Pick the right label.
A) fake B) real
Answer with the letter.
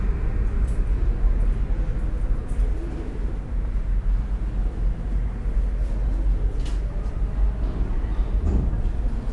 B